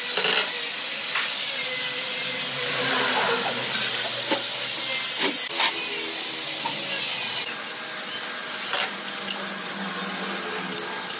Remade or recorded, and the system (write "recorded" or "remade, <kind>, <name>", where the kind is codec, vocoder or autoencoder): recorded